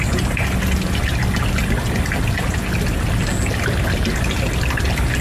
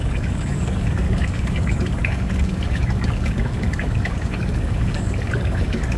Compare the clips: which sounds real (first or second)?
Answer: first